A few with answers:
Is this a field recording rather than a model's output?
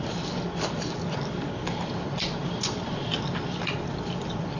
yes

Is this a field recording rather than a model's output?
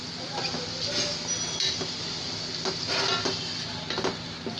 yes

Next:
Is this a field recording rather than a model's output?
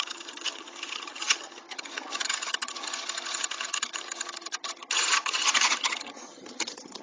no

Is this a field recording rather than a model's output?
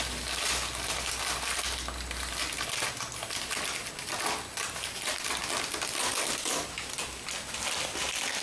yes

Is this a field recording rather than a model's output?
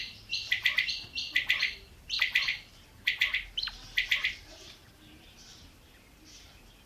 no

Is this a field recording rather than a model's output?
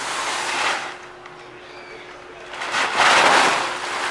yes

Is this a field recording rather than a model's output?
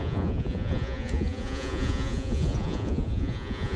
no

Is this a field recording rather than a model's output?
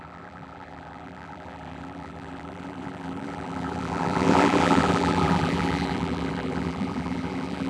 no